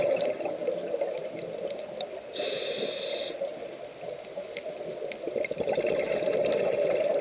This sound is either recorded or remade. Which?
recorded